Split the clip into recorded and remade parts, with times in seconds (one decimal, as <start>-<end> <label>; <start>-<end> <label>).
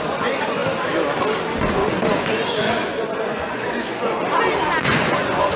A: 0.0-0.6 remade; 0.6-2.1 recorded; 2.1-4.2 remade; 4.2-4.8 recorded; 4.8-5.6 remade